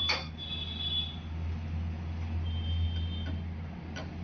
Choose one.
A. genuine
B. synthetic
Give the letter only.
A